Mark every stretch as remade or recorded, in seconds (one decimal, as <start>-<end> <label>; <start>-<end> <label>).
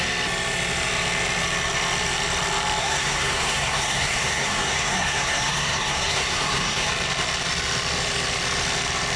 0.0-2.8 recorded; 2.8-6.9 remade; 6.9-9.2 recorded